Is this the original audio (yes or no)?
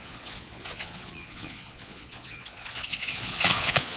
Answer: no